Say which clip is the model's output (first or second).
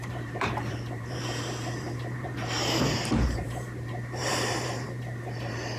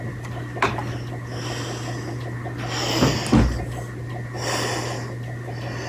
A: first